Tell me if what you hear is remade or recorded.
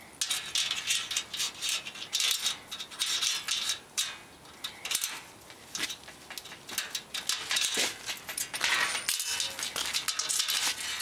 recorded